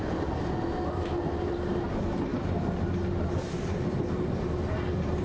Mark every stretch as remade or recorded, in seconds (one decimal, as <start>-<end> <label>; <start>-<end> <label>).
0.0-5.2 recorded